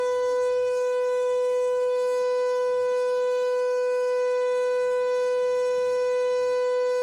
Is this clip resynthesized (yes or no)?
yes